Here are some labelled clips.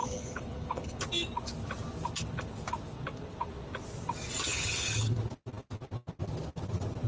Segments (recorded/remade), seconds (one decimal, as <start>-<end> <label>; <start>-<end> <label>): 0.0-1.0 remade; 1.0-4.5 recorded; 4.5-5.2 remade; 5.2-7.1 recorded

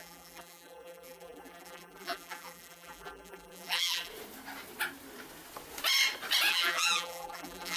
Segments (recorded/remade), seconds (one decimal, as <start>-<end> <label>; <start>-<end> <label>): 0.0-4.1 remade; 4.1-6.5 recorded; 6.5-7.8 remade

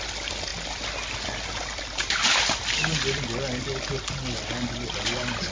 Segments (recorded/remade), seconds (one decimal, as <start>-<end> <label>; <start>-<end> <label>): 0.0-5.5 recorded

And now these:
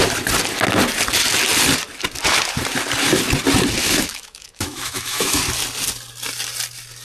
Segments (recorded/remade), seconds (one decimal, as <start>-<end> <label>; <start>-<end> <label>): 0.0-3.8 recorded; 3.8-5.4 remade; 5.4-7.0 recorded

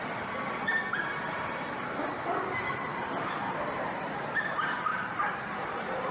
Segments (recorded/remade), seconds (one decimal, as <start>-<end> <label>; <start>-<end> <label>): 0.0-2.9 recorded; 2.9-4.4 remade; 4.4-4.9 recorded; 4.9-6.1 remade

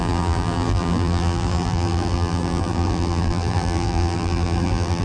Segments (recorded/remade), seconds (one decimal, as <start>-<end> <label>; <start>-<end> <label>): 0.0-5.0 remade